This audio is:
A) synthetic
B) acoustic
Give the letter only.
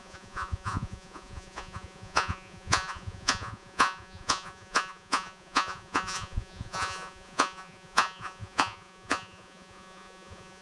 A